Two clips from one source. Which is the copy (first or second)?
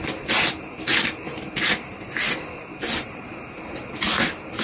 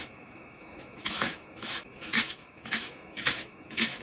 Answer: second